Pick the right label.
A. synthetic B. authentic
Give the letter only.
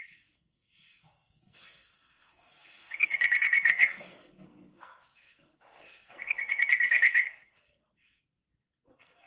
A